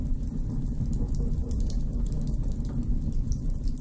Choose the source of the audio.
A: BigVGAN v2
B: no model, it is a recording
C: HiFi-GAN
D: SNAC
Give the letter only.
B